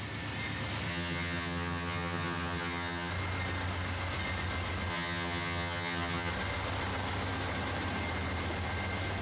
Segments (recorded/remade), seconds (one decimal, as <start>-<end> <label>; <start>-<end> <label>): 0.0-0.9 recorded; 0.9-3.1 remade; 3.1-4.9 recorded; 4.9-6.3 remade; 6.3-9.2 recorded